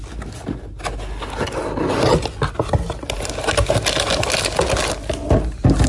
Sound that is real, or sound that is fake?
real